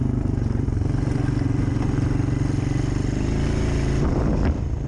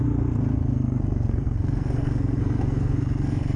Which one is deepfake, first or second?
second